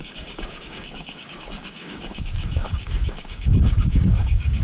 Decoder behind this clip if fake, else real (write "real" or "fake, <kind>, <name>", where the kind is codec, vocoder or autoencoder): fake, codec, DAC